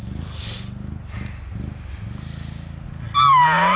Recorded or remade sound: recorded